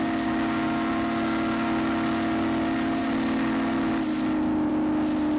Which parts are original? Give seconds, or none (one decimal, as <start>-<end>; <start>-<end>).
0.0-5.4